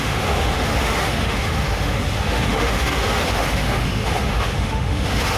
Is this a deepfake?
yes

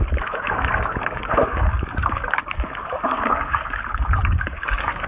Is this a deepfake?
yes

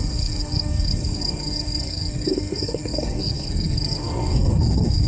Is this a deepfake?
yes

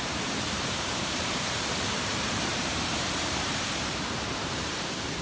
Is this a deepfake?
yes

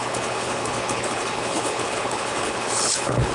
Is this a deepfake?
yes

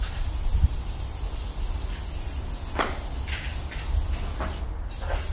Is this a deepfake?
no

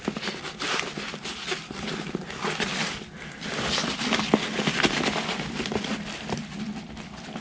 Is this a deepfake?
no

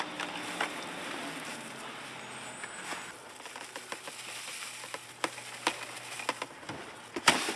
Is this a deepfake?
no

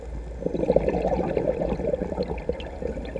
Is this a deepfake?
no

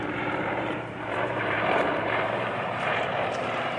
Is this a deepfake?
yes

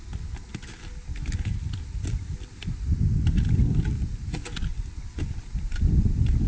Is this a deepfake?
no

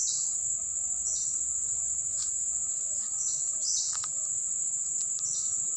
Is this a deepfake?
no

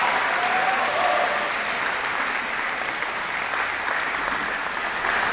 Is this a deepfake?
no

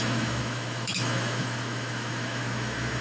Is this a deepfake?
yes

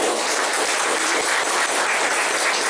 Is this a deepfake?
no